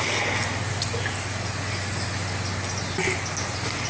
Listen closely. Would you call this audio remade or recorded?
recorded